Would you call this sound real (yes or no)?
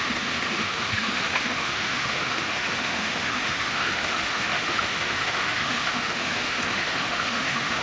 no